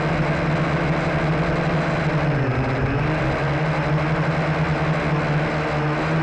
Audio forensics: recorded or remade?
recorded